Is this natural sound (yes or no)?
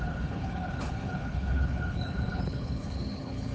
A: no